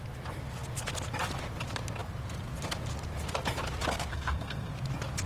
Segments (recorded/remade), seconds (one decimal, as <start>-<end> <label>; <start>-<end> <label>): 0.0-4.1 recorded; 4.1-4.7 remade; 4.7-5.3 recorded